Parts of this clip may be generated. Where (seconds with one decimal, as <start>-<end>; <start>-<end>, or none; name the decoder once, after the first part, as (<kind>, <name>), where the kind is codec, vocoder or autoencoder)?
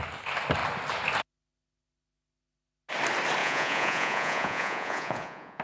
3.4-5.6 (vocoder, Vocos)